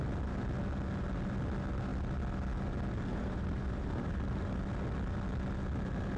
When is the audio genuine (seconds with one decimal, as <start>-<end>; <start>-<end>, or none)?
0.0-3.1; 4.6-6.2